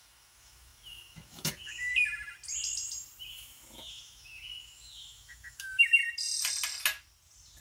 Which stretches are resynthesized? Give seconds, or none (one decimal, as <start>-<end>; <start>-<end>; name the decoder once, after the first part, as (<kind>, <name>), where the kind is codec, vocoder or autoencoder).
0.0-1.9 (autoencoder, DAC-VAE); 3.3-6.0